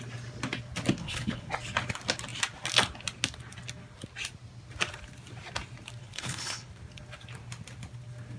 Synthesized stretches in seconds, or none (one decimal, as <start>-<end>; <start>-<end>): 1.0-1.5; 6.0-6.7